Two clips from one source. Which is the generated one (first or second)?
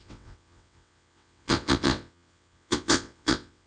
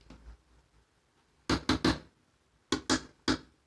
first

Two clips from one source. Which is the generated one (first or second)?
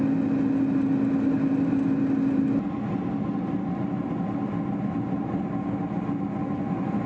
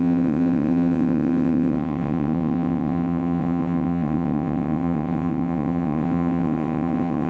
second